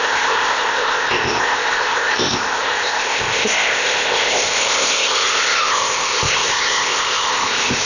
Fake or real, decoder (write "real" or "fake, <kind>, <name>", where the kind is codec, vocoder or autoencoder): fake, codec, ZipCodec